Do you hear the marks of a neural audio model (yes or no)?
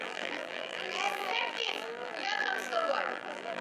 yes